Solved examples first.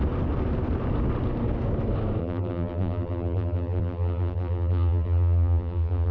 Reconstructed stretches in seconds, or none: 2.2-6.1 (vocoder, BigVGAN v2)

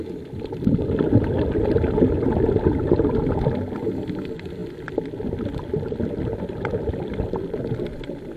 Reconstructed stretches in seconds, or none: none